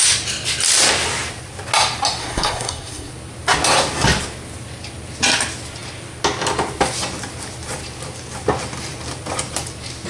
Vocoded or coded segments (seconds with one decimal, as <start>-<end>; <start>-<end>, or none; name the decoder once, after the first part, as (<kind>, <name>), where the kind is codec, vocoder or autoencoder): 2.2-3.1 (codec, SNAC)